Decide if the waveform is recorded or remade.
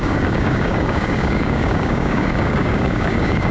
remade